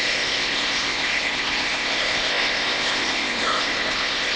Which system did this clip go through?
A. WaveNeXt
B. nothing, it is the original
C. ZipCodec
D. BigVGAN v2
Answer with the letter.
C